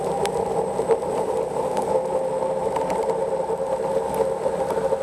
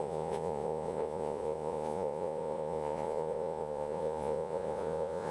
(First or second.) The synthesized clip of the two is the second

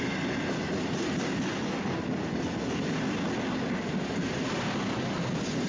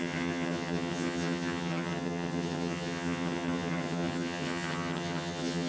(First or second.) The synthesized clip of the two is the second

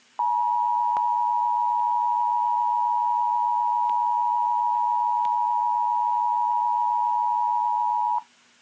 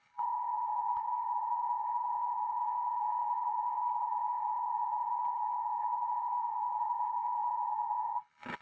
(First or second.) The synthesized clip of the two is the second